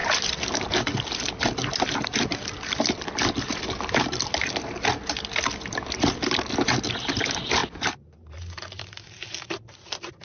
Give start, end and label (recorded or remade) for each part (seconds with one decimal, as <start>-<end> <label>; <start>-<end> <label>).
0.0-1.2 recorded; 1.2-2.1 remade; 2.1-7.0 recorded; 7.0-7.6 remade; 7.6-8.3 recorded; 8.3-10.2 remade